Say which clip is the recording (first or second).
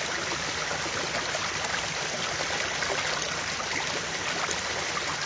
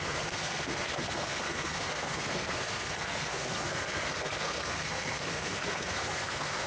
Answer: first